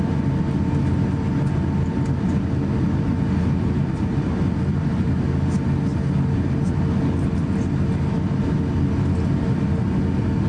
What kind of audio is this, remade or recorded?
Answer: recorded